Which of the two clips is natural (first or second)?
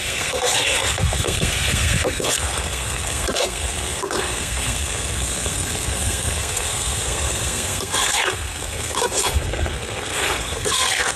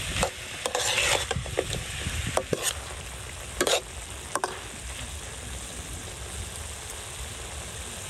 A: second